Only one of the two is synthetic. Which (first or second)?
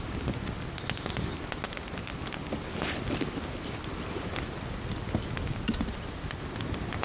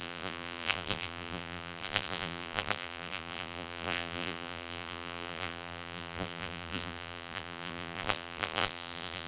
second